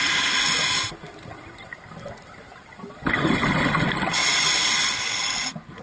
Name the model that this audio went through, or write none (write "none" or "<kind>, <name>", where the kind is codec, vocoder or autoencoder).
none